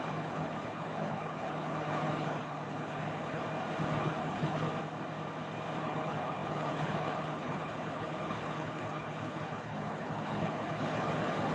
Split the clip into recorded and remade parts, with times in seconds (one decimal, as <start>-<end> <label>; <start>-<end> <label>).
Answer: 0.0-3.4 remade; 3.4-4.0 recorded; 4.0-4.7 remade; 4.7-5.8 recorded; 5.8-11.5 remade